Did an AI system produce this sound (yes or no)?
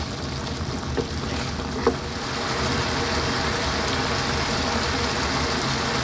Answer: no